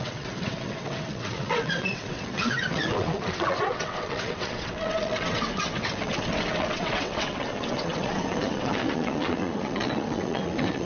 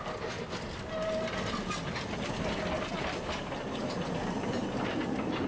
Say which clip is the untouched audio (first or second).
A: second